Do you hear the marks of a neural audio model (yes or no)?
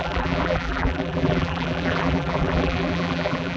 yes